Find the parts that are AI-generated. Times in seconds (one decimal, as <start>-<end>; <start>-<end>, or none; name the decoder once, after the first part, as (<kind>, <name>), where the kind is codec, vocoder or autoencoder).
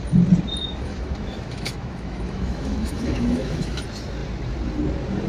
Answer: 0.6-3.8 (autoencoder, DAC-VAE)